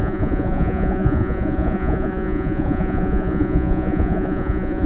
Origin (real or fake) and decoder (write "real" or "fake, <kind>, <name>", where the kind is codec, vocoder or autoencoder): fake, vocoder, Vocos